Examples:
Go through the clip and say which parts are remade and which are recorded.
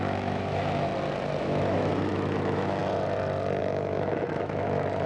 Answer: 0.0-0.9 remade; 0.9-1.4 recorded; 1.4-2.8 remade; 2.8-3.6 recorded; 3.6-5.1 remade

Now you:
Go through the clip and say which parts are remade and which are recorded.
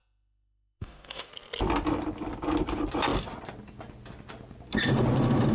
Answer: 0.0-1.3 remade; 1.3-5.5 recorded